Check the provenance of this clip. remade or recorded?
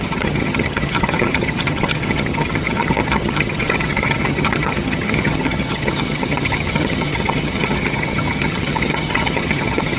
remade